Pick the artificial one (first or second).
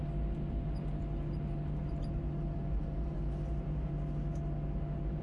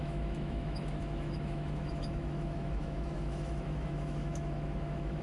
second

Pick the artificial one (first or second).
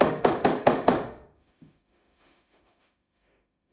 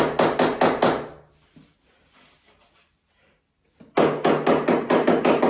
first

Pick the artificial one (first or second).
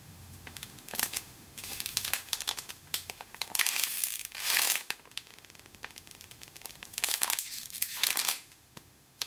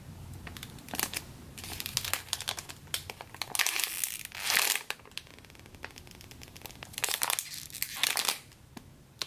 first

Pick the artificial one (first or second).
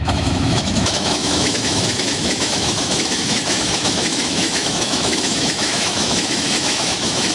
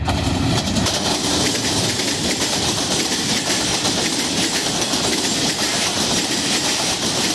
first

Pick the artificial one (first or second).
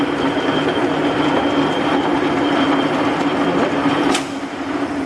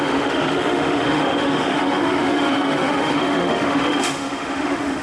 second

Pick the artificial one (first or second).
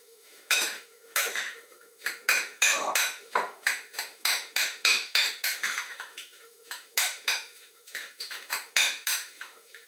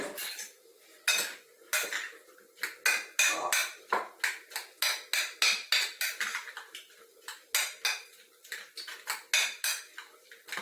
first